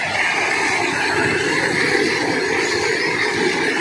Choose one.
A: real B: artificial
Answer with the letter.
A